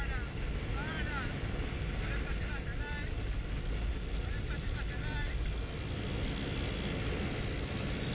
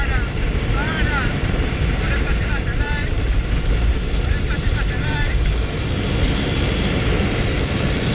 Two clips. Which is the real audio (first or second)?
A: first